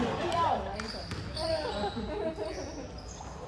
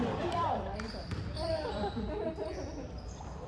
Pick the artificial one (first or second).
second